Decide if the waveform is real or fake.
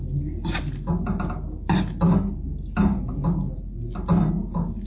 real